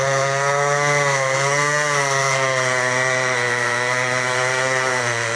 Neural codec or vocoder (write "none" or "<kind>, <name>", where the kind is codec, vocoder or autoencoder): codec, SNAC